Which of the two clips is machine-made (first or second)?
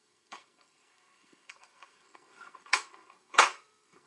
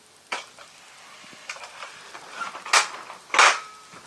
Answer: first